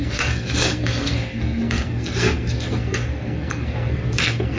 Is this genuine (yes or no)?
no